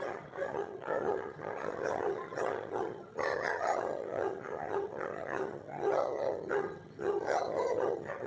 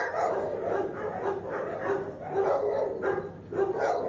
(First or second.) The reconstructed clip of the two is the first